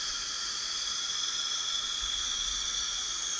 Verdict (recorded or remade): remade